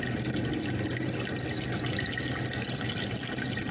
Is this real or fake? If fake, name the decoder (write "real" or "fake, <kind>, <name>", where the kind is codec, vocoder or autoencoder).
real